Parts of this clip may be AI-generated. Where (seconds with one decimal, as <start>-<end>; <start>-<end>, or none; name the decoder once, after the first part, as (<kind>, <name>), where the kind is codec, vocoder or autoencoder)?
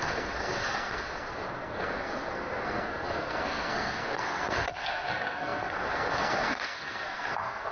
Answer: 0.0-7.7 (codec, SNAC)